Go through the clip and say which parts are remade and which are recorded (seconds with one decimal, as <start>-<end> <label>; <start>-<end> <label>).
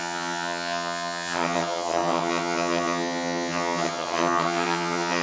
0.0-5.2 remade